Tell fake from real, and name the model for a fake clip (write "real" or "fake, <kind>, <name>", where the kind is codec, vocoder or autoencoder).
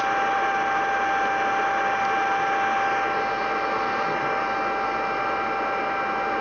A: real